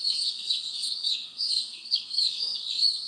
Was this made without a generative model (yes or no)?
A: no